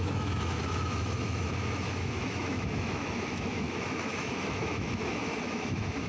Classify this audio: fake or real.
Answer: fake